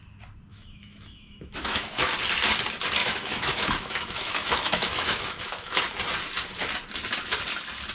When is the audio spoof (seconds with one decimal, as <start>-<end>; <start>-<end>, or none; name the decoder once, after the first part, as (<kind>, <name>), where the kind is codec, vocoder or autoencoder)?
0.5-2.1 (autoencoder, DAC-VAE); 3.0-5.8